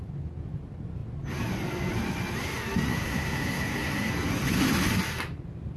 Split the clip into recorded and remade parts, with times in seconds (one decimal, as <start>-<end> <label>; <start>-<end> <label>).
0.0-2.9 recorded; 2.9-4.1 remade; 4.1-5.8 recorded